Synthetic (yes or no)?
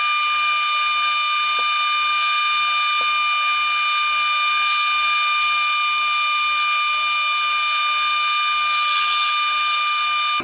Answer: no